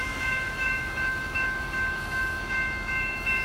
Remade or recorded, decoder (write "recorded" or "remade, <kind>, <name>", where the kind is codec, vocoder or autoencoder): remade, autoencoder, DAC-VAE